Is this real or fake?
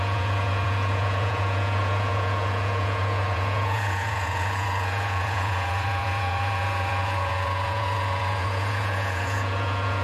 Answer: fake